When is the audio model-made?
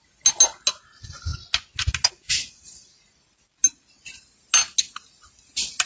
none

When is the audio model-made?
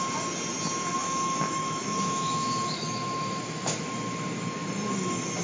1.0-3.9 (autoencoder, DAC-VAE)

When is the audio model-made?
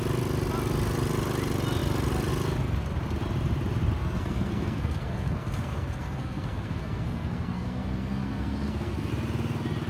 4.0-9.1 (codec, SNAC)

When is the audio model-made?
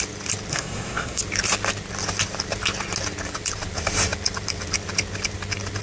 0.5-1.2 (codec, SNAC)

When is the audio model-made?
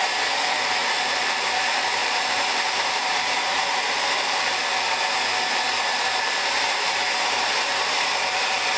0.8-4.6 (vocoder, BigVGAN v2); 5.3-7.0